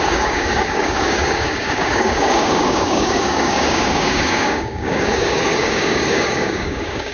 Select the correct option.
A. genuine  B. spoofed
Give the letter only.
B